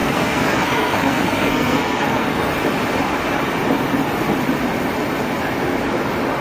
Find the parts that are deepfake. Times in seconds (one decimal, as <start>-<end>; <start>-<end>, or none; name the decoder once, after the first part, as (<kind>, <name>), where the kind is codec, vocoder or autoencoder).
0.0-2.5 (codec, SNAC)